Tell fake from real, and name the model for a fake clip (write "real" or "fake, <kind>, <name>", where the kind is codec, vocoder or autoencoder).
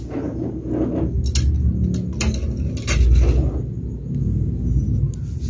real